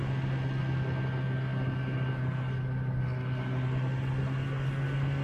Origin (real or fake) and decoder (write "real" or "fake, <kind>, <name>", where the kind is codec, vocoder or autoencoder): real